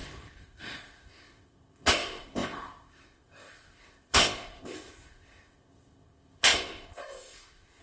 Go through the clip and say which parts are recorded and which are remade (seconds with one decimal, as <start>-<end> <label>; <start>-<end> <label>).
0.0-7.8 remade